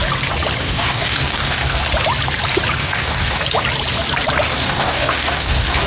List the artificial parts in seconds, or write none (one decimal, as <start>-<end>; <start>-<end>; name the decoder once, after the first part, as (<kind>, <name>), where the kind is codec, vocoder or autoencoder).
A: 0.6-1.8 (codec, DAC); 2.8-3.4; 4.5-5.9